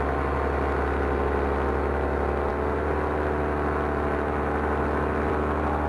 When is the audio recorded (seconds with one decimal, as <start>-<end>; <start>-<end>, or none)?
0.0-5.9